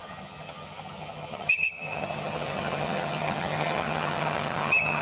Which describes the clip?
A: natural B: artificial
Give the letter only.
B